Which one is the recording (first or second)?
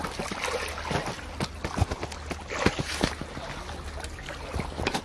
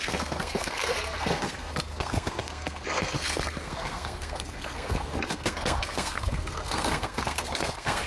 first